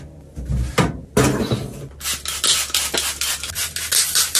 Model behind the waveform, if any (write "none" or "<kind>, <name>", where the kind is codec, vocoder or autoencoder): none